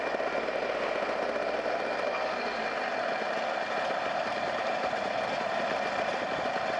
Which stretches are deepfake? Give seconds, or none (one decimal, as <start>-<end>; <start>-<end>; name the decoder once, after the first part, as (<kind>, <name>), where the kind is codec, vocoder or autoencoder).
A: 6.1-6.8 (vocoder, BigVGAN v2)